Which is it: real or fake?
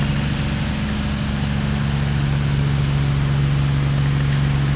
real